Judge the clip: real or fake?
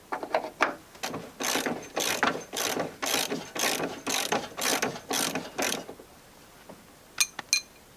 real